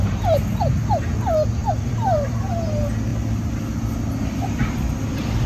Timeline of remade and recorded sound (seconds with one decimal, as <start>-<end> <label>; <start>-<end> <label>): 0.0-1.6 recorded; 1.6-2.4 remade; 2.4-3.1 recorded; 3.1-4.9 remade; 4.9-5.5 recorded